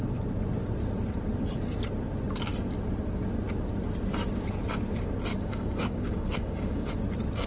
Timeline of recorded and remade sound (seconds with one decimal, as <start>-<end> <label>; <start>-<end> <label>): 0.0-5.3 recorded; 5.3-6.9 remade; 6.9-7.5 recorded